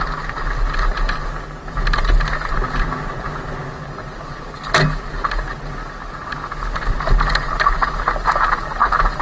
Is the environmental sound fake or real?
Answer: real